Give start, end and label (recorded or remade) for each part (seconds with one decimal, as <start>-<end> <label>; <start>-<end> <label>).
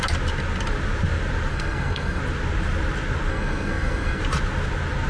0.0-1.5 recorded; 1.5-2.2 remade; 2.2-3.3 recorded; 3.3-4.2 remade; 4.2-5.1 recorded